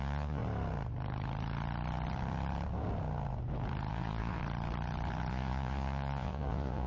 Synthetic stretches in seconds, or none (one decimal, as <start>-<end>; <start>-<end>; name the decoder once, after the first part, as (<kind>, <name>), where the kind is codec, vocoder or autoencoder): 0.0-0.4 (vocoder, Vocos); 3.9-4.4; 5.3-6.9

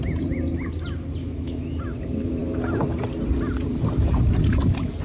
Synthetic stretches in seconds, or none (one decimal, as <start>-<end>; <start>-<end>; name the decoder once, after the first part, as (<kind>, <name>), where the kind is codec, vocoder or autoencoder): 1.2-1.8 (autoencoder, DAC-VAE)

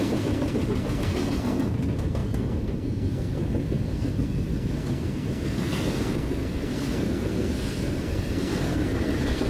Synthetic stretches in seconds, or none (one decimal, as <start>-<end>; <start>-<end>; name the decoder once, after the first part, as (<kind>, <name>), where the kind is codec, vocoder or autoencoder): 0.0-9.5 (codec, SNAC)

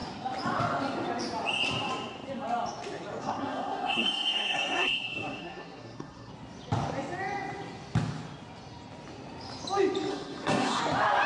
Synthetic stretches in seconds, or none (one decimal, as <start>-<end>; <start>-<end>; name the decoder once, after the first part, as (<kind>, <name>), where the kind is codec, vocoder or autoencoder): 3.2-6.3 (codec, SNAC); 10.1-10.8

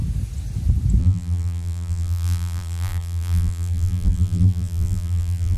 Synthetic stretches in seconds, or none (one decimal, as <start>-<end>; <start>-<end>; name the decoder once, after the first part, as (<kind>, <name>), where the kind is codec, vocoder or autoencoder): 1.0-5.6 (vocoder, BigVGAN v2)

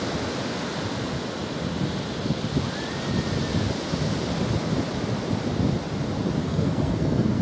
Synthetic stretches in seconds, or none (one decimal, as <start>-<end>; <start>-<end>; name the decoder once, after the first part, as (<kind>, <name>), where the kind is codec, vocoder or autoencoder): 6.4-7.4 (codec, SNAC)